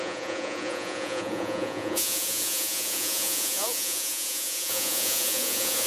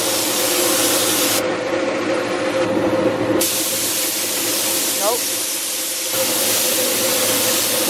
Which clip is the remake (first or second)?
first